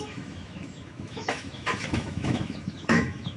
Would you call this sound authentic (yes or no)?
no